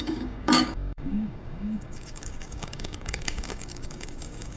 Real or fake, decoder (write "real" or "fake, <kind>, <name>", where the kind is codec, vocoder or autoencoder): fake, codec, DAC